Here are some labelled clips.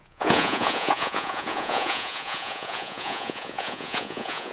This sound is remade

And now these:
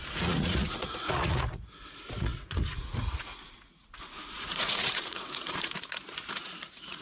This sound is remade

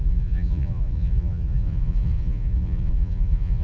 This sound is remade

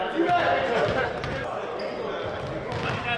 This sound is recorded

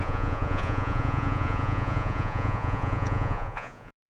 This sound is remade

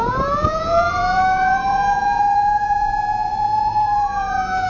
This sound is remade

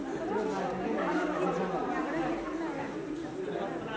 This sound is recorded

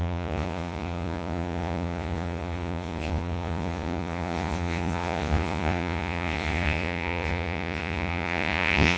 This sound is remade